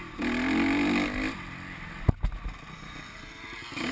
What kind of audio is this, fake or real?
real